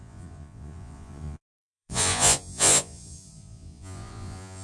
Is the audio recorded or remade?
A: remade